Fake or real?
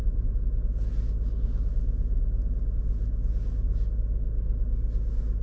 real